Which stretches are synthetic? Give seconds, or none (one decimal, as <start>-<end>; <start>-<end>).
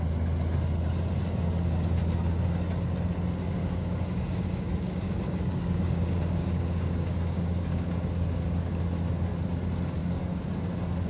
3.6-8.7; 10.0-10.6